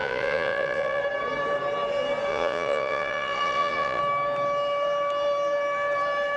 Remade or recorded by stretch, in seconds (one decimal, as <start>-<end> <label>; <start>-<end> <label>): 0.0-1.0 remade; 1.0-2.3 recorded; 2.3-4.0 remade; 4.0-6.4 recorded